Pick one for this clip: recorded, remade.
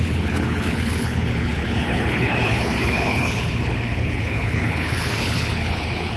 remade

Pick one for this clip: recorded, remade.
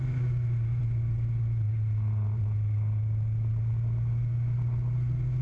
recorded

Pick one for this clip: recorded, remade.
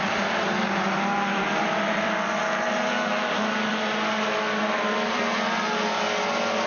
remade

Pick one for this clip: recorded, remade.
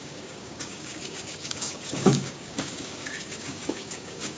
remade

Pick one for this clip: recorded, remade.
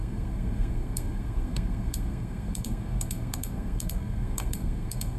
remade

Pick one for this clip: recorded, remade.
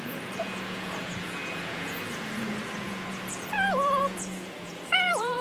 remade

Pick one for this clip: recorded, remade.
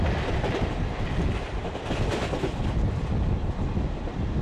recorded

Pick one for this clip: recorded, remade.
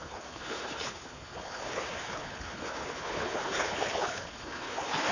remade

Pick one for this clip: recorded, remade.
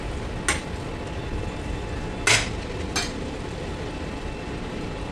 recorded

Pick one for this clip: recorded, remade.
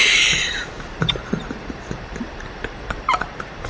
remade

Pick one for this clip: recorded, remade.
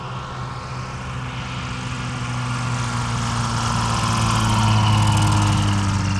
recorded